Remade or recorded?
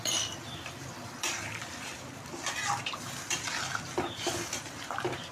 remade